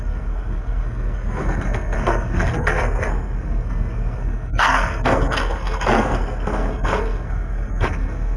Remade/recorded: remade